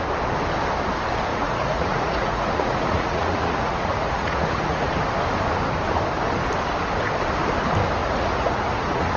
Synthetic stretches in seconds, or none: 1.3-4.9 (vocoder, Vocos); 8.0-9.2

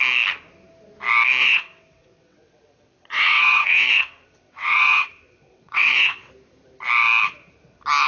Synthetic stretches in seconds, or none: 1.4-6.3 (vocoder, WaveNeXt)

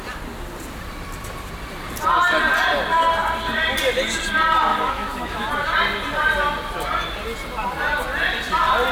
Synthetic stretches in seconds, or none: 4.7-5.5 (autoencoder, DAC-VAE)